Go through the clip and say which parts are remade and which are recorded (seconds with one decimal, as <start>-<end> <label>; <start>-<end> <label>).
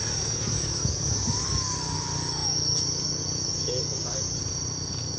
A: 0.0-4.4 remade; 4.4-5.2 recorded